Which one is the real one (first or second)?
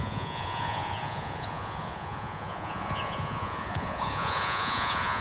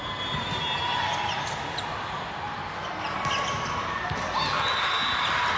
second